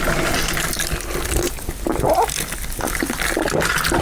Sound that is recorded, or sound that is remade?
recorded